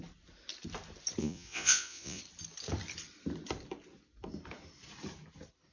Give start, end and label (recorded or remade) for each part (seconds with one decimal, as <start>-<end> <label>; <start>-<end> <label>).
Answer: 0.0-1.2 recorded; 1.2-2.2 remade; 2.2-5.7 recorded